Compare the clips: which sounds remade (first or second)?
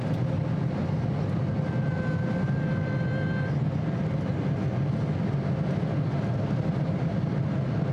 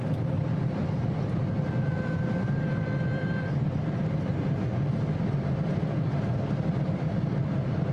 second